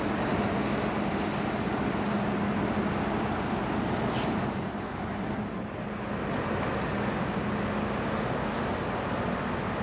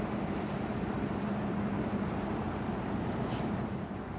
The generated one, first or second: second